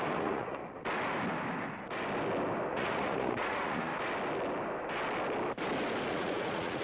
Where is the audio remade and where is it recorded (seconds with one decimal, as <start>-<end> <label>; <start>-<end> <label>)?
0.0-0.6 remade; 0.6-2.7 recorded; 2.7-3.9 remade; 3.9-6.1 recorded; 6.1-6.8 remade